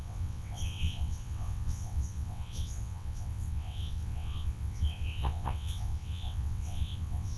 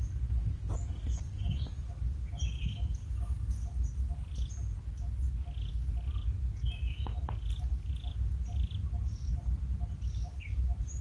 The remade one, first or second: first